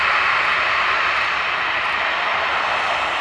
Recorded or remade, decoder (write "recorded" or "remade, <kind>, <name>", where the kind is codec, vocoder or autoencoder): recorded